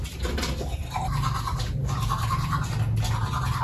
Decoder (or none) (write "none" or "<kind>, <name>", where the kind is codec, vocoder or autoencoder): none